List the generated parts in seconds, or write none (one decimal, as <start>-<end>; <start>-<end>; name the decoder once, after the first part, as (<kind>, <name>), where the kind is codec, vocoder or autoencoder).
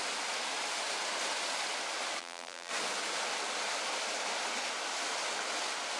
2.2-2.7 (vocoder, BigVGAN v2)